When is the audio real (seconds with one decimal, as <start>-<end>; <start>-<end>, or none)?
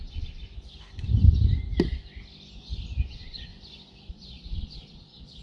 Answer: 0.4-3.1; 3.5-4.1